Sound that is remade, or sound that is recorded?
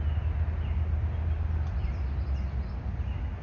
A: recorded